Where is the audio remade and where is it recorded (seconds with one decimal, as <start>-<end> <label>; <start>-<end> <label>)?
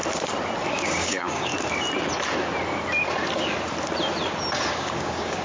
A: 0.0-0.7 recorded; 0.7-1.5 remade; 1.5-4.7 recorded; 4.7-5.4 remade